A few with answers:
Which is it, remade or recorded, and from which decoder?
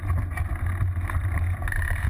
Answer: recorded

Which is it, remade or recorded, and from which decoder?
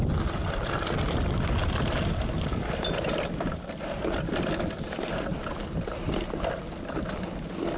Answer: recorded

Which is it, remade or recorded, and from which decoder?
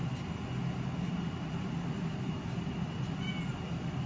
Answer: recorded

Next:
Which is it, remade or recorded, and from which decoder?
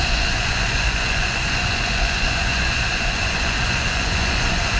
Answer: remade, vocoder, Vocos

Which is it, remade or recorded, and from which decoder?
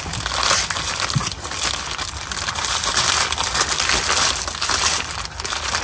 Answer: recorded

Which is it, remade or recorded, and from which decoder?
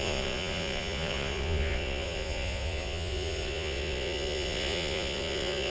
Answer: remade, vocoder, Vocos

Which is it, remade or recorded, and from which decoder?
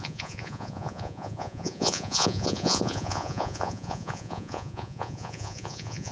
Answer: remade, vocoder, Vocos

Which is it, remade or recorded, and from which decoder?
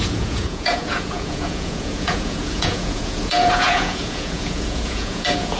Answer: remade, vocoder, Vocos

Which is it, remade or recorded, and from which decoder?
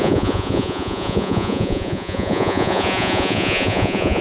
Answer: remade, vocoder, Vocos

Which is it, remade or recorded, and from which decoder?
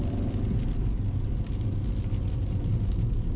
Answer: recorded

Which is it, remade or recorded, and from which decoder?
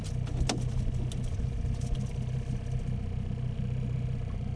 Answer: recorded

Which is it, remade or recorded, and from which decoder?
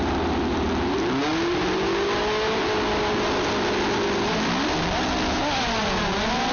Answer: recorded